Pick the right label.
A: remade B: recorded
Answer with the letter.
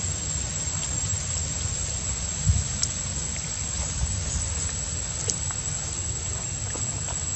B